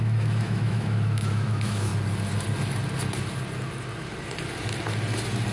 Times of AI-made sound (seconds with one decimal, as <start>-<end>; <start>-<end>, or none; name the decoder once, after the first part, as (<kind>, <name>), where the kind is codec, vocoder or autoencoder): 0.0-1.9 (autoencoder, DAC-VAE)